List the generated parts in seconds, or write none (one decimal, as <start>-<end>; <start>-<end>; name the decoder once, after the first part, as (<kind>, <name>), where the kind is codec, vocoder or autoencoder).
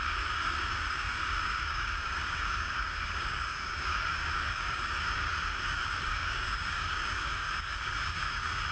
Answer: 0.0-8.7 (codec, DAC)